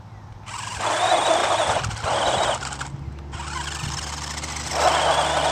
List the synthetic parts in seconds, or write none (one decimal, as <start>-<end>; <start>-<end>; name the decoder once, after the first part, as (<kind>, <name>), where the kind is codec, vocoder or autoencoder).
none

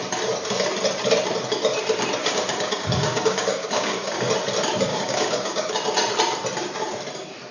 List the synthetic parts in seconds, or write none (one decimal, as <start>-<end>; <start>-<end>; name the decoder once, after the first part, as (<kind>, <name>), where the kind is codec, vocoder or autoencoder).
2.2-4.3 (codec, DAC); 4.9-5.7

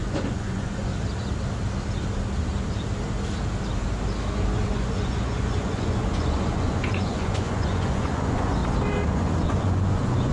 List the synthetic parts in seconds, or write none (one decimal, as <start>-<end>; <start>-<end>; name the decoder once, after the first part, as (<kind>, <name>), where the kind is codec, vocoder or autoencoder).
0.0-0.9 (vocoder, Vocos); 4.3-8.6; 9.1-10.3